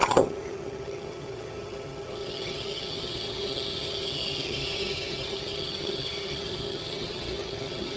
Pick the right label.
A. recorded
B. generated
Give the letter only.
B